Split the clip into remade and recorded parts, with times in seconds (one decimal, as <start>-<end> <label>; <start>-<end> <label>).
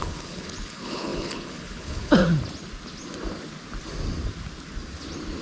0.0-2.2 remade; 2.2-5.4 recorded